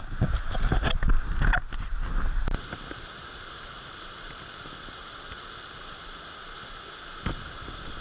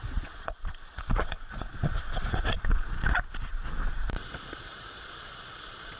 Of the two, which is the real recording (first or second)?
first